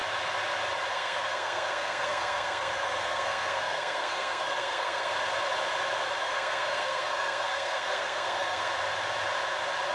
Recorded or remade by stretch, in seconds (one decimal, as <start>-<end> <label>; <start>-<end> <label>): 0.0-0.9 recorded; 0.9-5.1 remade; 5.1-6.2 recorded; 6.2-8.7 remade; 8.7-9.9 recorded